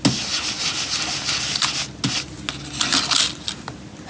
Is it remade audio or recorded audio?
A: recorded